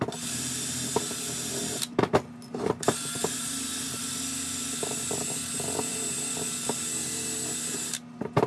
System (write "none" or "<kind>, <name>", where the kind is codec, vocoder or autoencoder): none